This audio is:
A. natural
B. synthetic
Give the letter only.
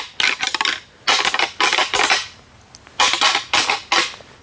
A